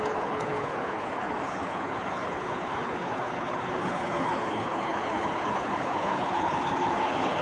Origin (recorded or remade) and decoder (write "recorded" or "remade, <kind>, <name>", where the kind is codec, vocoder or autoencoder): remade, codec, HILCodec